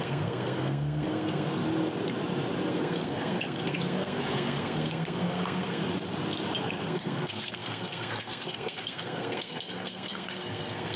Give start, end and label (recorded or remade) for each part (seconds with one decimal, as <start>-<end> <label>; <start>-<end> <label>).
0.0-1.6 remade; 1.6-2.7 recorded; 2.7-5.8 remade; 5.8-6.6 recorded; 6.6-11.0 remade